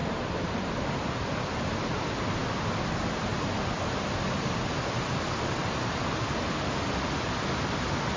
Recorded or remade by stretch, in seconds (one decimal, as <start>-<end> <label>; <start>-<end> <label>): 0.0-8.2 recorded